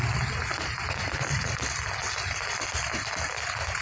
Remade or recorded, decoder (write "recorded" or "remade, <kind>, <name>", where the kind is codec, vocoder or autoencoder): recorded